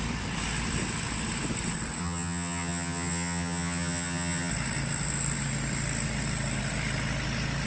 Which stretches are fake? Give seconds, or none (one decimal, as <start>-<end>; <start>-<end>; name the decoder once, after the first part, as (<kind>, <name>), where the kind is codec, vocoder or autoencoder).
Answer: 2.0-4.5 (vocoder, HiFi-GAN)